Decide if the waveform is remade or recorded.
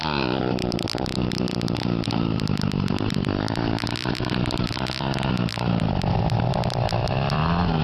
remade